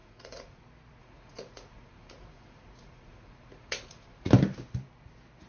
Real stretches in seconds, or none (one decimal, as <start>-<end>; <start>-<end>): 0.6-1.0; 4.3-5.5

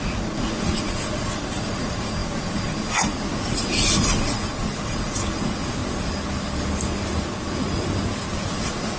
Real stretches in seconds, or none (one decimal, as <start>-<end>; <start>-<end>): 5.8-8.3

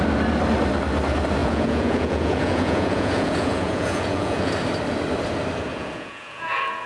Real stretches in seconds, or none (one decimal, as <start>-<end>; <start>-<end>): 0.0-1.4; 4.5-5.7